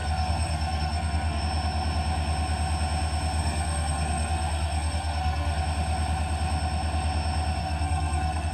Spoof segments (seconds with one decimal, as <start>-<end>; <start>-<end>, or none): 0.0-1.4; 3.4-5.6; 7.6-8.5

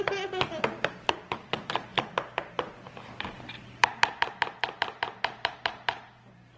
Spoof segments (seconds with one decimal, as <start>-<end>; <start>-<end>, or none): 1.9-5.6